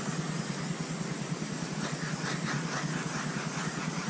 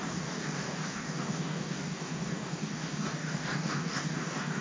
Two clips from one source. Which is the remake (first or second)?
second